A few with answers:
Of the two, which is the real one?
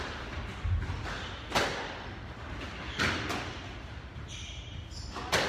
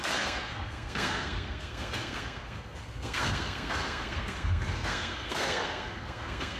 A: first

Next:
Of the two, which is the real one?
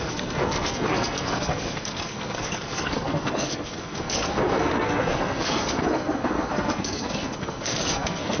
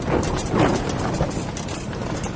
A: second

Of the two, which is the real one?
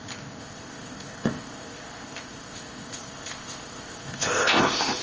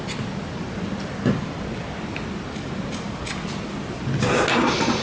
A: second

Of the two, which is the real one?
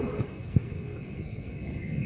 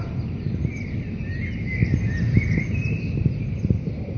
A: second